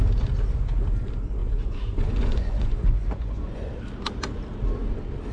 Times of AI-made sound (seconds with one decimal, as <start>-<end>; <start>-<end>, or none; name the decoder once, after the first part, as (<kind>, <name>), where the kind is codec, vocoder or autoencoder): 1.4-3.7 (vocoder, Vocos)